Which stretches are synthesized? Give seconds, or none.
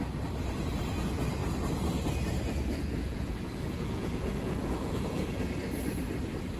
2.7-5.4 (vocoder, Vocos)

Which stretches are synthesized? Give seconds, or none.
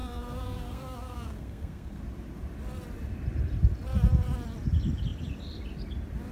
0.0-2.0 (codec, SNAC)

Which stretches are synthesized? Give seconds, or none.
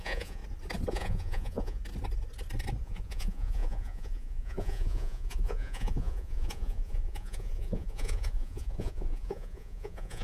0.0-0.4 (vocoder, Vocos); 0.9-1.8; 2.8-10.2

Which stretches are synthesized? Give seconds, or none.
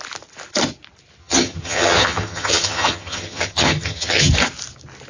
1.2-4.3 (vocoder, HiFi-GAN)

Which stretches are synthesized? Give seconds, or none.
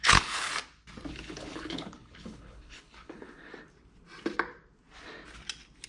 0.0-0.5 (codec, HILCodec); 1.1-3.5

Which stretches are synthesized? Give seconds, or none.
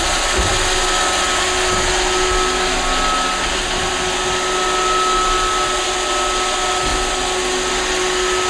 none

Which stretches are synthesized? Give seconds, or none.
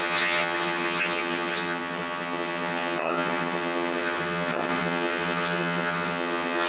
0.0-6.7 (vocoder, HiFi-GAN)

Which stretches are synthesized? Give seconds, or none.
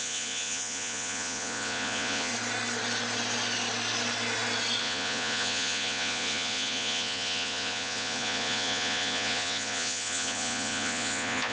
0.0-2.3 (vocoder, Vocos); 4.8-11.5